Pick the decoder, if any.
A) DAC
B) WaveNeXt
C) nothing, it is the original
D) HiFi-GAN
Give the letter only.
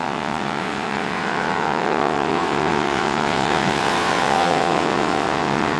B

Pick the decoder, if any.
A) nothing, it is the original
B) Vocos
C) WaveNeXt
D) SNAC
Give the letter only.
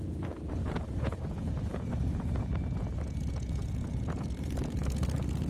B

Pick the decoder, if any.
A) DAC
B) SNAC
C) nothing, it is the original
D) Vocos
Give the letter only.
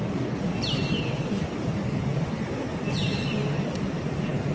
C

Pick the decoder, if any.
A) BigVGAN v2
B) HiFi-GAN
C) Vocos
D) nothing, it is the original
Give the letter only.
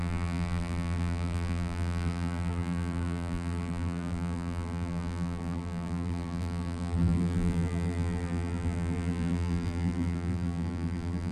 A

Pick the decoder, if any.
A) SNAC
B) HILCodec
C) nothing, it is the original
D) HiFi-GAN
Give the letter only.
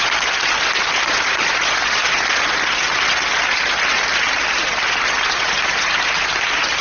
C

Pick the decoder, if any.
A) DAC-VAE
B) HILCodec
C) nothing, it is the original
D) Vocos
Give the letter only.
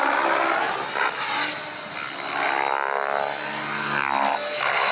C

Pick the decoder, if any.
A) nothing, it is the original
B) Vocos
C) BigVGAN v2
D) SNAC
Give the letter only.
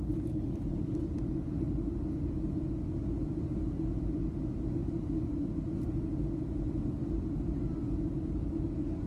A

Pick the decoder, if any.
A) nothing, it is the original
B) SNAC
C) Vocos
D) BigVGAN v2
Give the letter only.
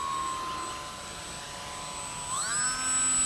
A